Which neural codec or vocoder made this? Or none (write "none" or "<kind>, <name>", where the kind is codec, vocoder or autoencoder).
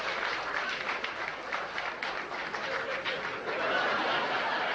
none